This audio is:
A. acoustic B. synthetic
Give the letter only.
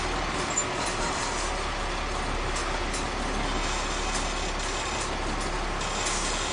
A